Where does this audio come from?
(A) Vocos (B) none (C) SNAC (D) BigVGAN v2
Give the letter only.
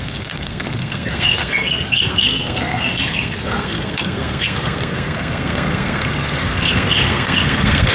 C